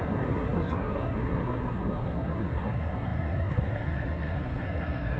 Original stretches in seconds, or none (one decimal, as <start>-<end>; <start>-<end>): none